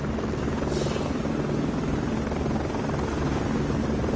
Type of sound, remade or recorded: recorded